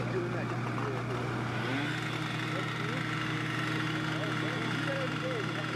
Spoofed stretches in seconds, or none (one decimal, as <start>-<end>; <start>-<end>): none